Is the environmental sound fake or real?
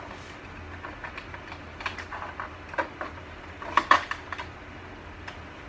real